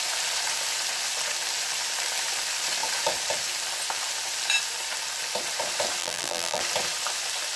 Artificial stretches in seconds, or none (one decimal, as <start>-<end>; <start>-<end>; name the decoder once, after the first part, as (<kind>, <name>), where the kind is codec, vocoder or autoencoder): 6.0-6.6 (vocoder, BigVGAN v2)